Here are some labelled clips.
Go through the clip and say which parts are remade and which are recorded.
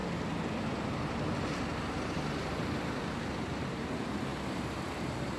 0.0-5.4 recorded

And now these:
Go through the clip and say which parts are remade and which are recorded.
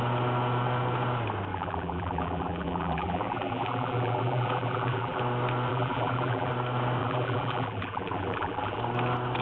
0.0-1.5 recorded; 1.5-5.2 remade; 5.2-5.7 recorded; 5.7-6.5 remade; 6.5-7.0 recorded; 7.0-8.8 remade; 8.8-9.4 recorded